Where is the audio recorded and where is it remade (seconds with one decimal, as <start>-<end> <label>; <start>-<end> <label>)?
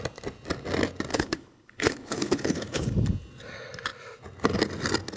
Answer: 0.0-1.1 recorded; 1.1-2.8 remade; 2.8-5.2 recorded